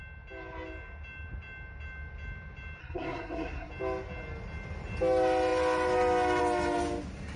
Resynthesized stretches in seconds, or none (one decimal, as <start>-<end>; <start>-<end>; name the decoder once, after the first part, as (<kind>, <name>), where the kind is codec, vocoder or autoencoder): 2.8-3.7 (codec, SNAC)